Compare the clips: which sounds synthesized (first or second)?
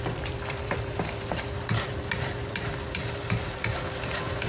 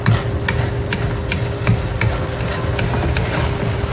first